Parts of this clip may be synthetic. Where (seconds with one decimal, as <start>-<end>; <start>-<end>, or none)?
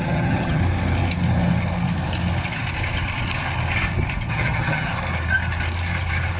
0.0-0.6; 4.3-4.9